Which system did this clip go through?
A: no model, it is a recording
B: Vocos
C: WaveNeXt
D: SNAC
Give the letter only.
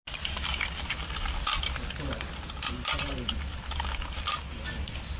A